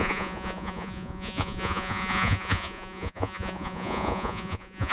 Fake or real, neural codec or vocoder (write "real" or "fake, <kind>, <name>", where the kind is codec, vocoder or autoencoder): fake, vocoder, Vocos